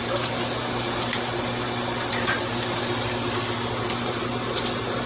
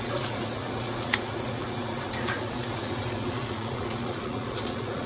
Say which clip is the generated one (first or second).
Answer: second